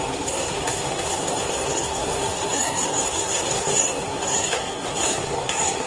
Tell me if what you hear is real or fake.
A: fake